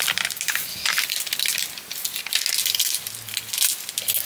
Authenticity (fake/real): real